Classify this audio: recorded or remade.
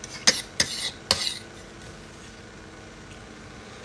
recorded